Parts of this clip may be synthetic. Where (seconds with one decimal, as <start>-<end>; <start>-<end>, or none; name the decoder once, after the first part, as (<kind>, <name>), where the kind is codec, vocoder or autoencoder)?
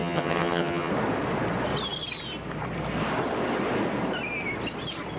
0.0-0.9 (vocoder, HiFi-GAN)